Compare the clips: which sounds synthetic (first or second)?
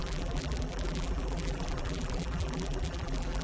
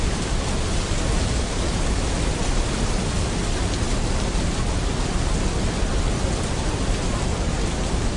first